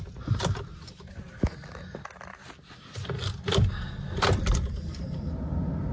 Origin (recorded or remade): recorded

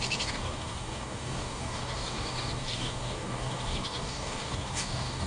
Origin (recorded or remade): remade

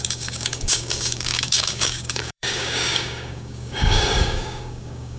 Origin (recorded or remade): remade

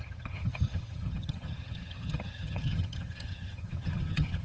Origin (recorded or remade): remade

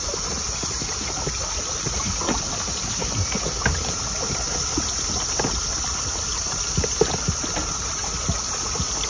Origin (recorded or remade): recorded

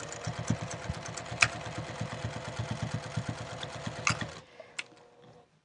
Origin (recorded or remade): recorded